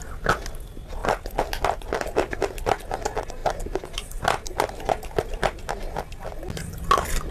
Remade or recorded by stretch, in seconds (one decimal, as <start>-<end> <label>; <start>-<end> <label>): 0.0-3.4 recorded; 3.4-4.2 remade; 4.2-7.3 recorded